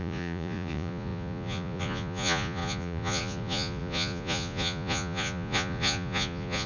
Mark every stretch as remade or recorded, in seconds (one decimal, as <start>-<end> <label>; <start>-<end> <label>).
0.0-6.7 remade